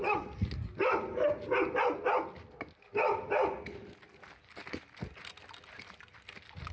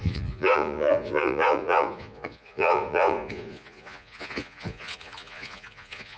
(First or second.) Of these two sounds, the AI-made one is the second